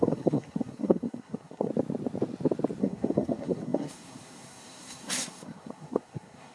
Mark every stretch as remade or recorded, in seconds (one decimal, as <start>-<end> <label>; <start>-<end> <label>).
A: 0.0-1.7 remade; 1.7-2.8 recorded; 2.8-6.5 remade